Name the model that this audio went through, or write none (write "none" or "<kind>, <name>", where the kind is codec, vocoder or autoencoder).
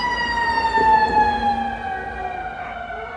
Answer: none